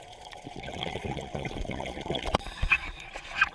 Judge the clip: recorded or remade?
remade